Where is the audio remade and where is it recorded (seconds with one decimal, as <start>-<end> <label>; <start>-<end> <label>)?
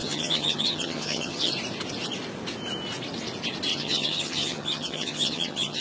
0.0-1.5 remade; 1.5-3.7 recorded; 3.7-5.8 remade